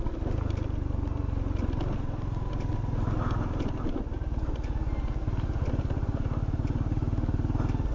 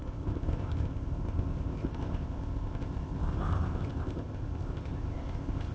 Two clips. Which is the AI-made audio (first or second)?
second